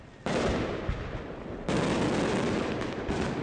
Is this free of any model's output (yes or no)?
yes